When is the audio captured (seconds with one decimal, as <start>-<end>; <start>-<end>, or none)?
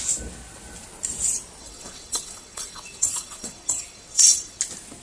0.0-1.6; 4.6-5.0